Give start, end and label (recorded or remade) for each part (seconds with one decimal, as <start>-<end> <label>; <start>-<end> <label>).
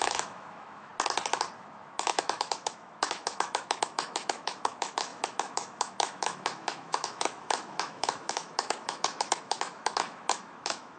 0.0-0.9 remade; 0.9-1.6 recorded; 1.6-11.0 remade